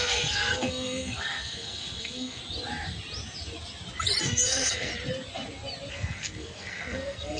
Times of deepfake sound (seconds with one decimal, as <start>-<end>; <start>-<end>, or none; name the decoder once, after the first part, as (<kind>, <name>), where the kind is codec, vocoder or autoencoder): 0.0-2.4 (codec, SNAC); 4.2-4.9; 5.9-7.4